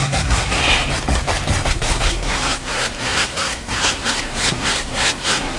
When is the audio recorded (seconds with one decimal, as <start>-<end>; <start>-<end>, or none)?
0.6-1.7